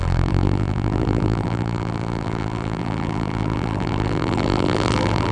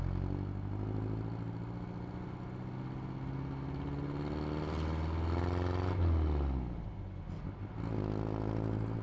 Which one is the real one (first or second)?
second